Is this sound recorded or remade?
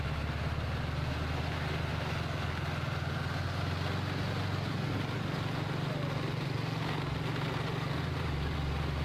recorded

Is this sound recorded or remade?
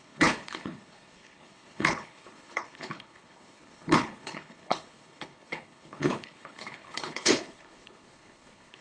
remade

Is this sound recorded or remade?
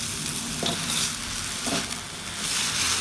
recorded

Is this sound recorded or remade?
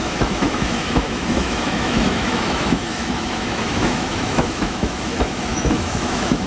remade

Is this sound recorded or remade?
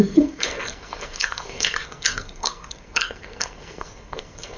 remade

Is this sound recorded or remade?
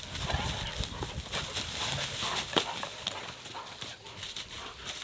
recorded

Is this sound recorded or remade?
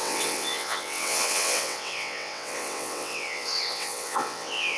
remade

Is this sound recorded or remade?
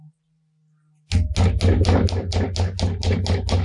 recorded